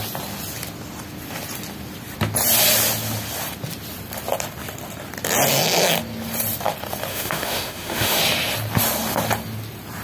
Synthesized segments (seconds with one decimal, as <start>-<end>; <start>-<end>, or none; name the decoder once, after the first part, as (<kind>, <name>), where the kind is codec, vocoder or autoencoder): 7.1-8.2 (autoencoder, DAC-VAE)